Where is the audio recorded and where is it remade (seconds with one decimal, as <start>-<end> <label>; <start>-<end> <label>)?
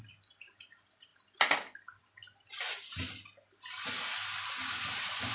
0.0-5.3 recorded